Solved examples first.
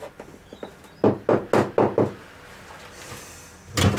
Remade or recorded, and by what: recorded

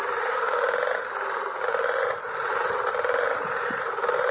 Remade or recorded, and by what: remade, vocoder, BigVGAN v2